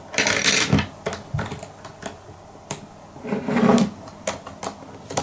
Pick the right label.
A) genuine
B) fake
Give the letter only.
A